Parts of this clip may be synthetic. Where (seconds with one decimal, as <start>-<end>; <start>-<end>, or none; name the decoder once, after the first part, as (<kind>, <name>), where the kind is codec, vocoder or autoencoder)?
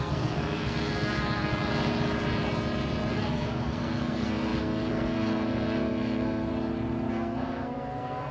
0.0-1.5 (codec, SNAC); 3.1-6.5; 7.1-8.3